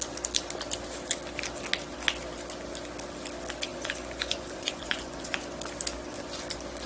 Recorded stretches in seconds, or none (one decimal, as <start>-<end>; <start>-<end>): 0.0-3.7; 5.4-6.9